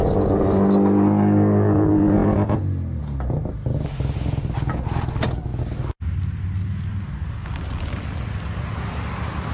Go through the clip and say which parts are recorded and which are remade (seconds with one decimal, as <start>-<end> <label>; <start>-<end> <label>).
0.0-9.5 recorded